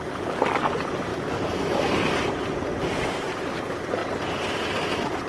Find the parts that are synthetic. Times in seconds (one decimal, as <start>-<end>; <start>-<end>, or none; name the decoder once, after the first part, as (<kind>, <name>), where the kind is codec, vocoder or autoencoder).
1.1-3.6 (vocoder, BigVGAN v2)